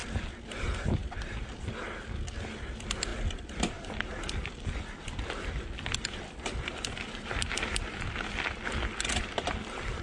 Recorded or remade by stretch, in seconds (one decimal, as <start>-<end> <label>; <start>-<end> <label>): 0.0-1.1 remade; 1.1-3.1 recorded; 3.1-7.5 remade; 7.5-10.0 recorded